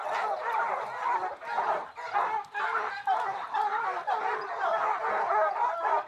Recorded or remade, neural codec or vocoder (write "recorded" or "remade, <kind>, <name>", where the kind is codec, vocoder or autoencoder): recorded